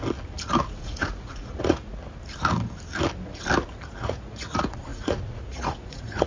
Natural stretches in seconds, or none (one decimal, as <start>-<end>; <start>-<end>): 0.0-0.8; 1.9-4.0